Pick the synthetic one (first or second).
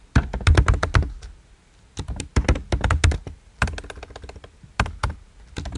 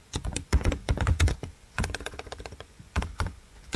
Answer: second